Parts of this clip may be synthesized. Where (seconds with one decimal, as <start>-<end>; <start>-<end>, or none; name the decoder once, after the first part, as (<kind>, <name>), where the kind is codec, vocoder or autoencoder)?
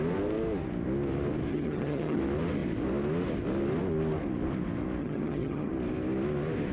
1.5-2.2 (vocoder, HiFi-GAN); 5.0-5.7